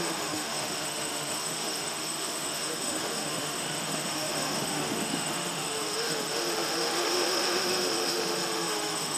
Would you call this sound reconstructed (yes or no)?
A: yes